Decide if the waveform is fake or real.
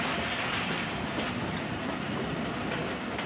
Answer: real